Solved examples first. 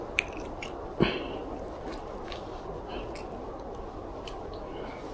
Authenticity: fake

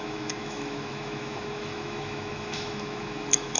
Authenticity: fake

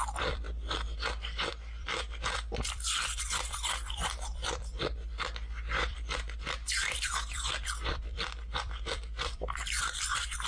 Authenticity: fake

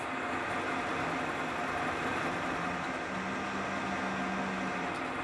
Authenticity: real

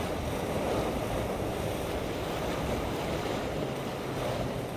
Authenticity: real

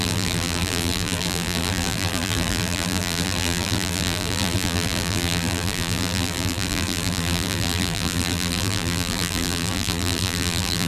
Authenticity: fake